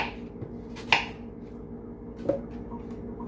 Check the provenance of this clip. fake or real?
real